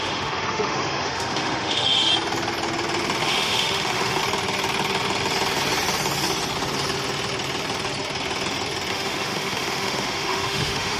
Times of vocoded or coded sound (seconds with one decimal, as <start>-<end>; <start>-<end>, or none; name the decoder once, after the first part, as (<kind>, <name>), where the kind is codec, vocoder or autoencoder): 0.0-2.1 (autoencoder, DAC-VAE); 3.2-4.2; 8.9-11.0